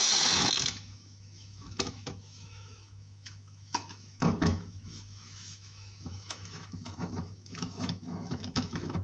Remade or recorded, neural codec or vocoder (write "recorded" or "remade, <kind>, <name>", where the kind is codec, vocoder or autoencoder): remade, autoencoder, DAC-VAE